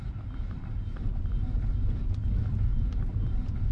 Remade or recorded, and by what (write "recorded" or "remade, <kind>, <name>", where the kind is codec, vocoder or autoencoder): recorded